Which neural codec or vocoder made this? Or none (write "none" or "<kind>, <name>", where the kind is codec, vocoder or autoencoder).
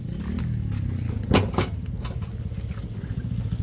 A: none